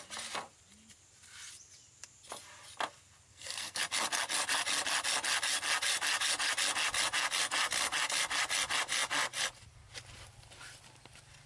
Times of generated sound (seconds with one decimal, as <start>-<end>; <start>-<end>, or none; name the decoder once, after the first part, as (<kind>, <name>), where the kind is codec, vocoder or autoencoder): 3.3-3.8 (codec, SNAC)